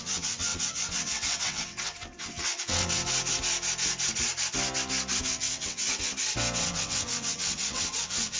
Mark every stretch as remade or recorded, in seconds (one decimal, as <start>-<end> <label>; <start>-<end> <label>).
0.0-3.0 remade; 3.0-5.2 recorded; 5.2-6.1 remade; 6.1-6.6 recorded; 6.6-8.4 remade

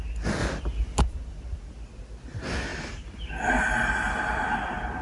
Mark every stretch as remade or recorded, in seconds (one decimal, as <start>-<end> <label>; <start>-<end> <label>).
0.0-2.7 recorded; 2.7-3.3 remade; 3.3-5.0 recorded

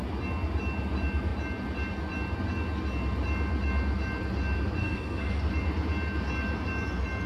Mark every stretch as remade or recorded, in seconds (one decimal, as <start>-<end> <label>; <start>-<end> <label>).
0.0-4.8 recorded; 4.8-5.4 remade; 5.4-7.3 recorded

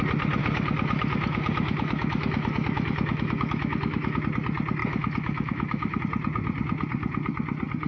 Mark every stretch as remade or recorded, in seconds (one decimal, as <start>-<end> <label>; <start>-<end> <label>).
0.0-0.4 recorded; 0.4-4.2 remade; 4.2-4.8 recorded; 4.8-6.0 remade; 6.0-7.9 recorded

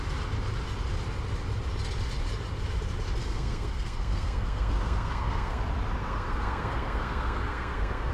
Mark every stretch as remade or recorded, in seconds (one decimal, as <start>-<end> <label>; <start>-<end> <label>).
0.0-3.2 recorded; 3.2-5.6 remade; 5.6-6.0 recorded; 6.0-8.1 remade